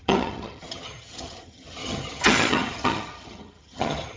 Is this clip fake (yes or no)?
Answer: yes